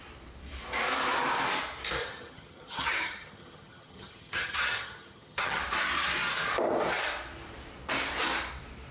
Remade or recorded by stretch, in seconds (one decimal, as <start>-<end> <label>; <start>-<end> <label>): 0.0-2.0 recorded; 2.0-5.6 remade; 5.6-8.9 recorded